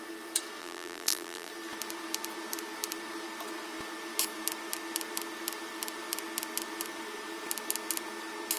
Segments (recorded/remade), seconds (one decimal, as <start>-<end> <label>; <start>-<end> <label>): 0.0-0.6 recorded; 0.6-1.5 remade; 1.5-8.6 recorded